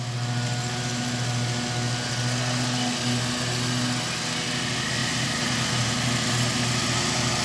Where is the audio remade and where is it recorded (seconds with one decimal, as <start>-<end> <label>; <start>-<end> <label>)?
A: 0.0-5.0 recorded; 5.0-5.9 remade; 5.9-7.4 recorded